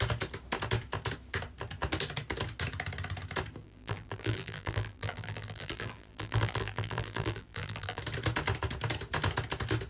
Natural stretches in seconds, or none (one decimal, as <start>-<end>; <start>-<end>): 0.0-3.6; 8.0-9.9